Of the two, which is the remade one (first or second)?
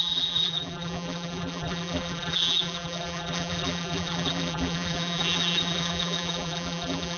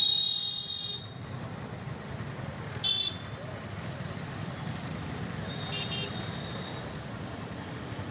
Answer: first